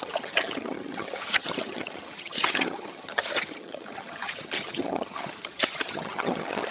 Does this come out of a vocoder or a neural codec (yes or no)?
yes